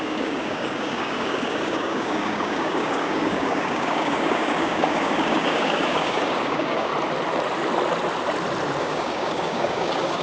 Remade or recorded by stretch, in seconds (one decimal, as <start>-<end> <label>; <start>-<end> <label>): 0.0-6.9 remade; 6.9-8.8 recorded; 8.8-10.2 remade